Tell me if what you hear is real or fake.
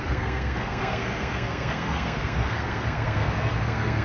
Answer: fake